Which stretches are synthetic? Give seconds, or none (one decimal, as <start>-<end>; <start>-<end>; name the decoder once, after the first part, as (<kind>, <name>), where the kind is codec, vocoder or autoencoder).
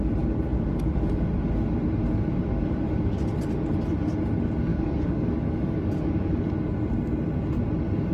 4.7-6.5 (codec, DAC)